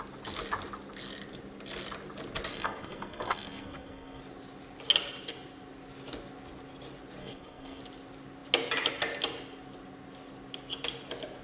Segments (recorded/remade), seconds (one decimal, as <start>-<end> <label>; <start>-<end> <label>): 0.0-2.5 recorded; 2.5-4.2 remade; 4.2-7.2 recorded; 7.2-7.8 remade; 7.8-11.4 recorded